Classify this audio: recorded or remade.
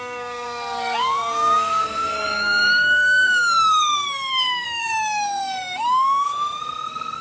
remade